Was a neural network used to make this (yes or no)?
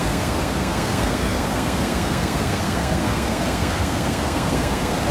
yes